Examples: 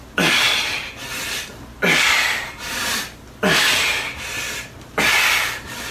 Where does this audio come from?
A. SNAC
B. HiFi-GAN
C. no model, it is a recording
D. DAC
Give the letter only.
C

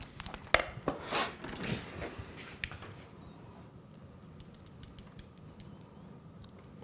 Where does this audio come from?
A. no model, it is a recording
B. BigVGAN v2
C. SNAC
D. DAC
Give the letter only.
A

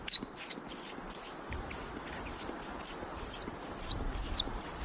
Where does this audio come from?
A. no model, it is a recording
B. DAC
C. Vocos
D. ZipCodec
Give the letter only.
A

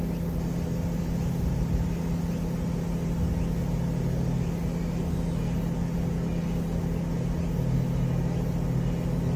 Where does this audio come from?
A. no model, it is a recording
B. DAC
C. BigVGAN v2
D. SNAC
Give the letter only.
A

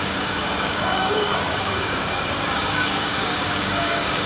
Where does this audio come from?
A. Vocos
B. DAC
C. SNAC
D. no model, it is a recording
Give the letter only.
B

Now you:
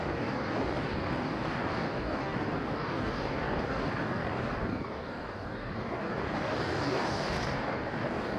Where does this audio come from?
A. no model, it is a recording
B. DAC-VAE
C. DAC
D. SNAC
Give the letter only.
C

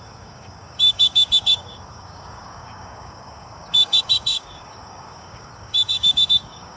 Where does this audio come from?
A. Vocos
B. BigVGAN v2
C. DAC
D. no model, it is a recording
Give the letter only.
C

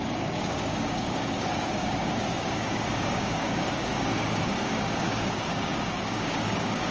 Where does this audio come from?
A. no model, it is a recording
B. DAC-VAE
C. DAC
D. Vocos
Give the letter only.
C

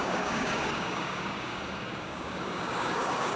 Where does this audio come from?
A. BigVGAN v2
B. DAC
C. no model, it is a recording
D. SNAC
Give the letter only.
B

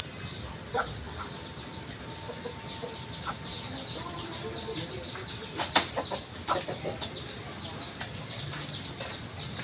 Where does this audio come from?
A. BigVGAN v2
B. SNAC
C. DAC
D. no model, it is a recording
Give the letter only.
D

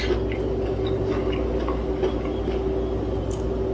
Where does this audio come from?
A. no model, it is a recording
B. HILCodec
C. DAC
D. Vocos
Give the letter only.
A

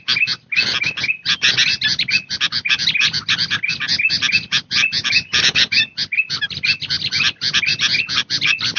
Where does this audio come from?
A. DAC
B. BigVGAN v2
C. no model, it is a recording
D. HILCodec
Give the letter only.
C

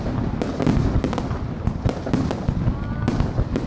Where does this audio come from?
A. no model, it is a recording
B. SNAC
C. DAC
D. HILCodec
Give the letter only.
A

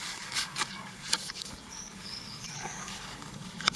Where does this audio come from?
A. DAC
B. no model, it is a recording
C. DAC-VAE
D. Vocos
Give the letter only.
A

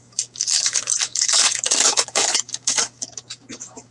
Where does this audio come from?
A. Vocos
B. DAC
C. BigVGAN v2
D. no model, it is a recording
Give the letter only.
B